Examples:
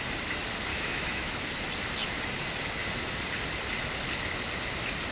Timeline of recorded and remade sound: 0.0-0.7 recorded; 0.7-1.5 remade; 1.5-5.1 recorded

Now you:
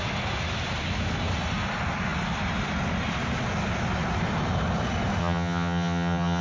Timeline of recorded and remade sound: 0.0-5.2 recorded; 5.2-6.4 remade